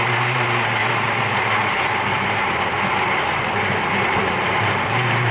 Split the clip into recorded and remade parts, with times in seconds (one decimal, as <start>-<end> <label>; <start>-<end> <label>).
0.0-0.8 recorded; 0.8-2.8 remade; 2.8-5.3 recorded